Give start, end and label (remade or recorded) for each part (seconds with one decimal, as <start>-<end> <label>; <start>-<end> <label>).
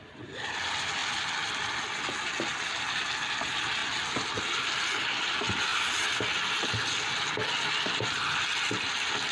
0.0-9.3 recorded